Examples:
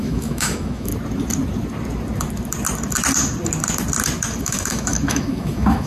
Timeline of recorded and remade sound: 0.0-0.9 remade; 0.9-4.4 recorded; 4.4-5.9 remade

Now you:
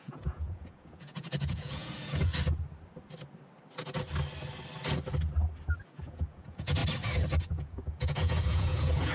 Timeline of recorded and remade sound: 0.0-2.3 remade; 2.3-5.8 recorded; 5.8-6.8 remade; 6.8-7.4 recorded; 7.4-9.1 remade

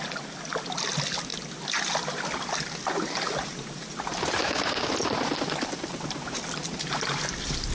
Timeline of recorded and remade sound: 0.0-4.4 recorded; 4.4-4.9 remade; 4.9-7.7 recorded

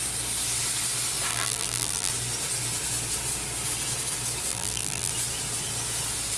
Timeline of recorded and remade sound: 0.0-1.3 recorded; 1.3-2.1 remade; 2.1-4.5 recorded; 4.5-5.1 remade; 5.1-6.4 recorded

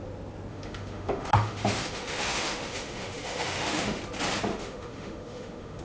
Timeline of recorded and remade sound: 0.0-0.5 recorded; 0.5-4.0 remade; 4.0-4.5 recorded; 4.5-5.8 remade

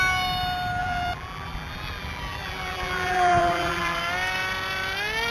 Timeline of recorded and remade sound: 0.0-0.8 recorded; 0.8-4.0 remade; 4.0-5.3 recorded

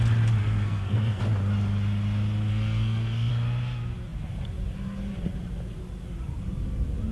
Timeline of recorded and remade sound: 0.0-0.4 recorded; 0.4-1.2 remade; 1.2-2.5 recorded; 2.5-3.3 remade; 3.3-7.1 recorded